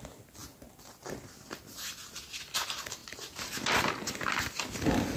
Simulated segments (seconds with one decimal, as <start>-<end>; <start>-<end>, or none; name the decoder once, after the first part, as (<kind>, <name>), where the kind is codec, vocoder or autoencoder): none